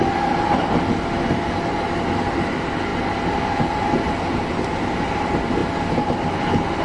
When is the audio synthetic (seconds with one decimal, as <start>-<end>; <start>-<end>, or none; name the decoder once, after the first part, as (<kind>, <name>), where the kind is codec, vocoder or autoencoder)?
none